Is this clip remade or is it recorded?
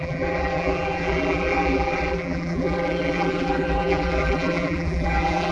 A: remade